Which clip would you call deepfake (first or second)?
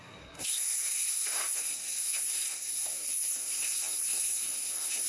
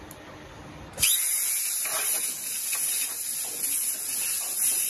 first